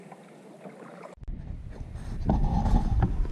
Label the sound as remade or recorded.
recorded